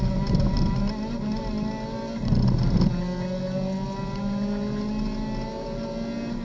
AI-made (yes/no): no